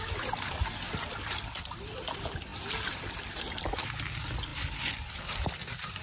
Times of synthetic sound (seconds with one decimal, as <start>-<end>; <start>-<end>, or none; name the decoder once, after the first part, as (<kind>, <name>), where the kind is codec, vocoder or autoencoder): none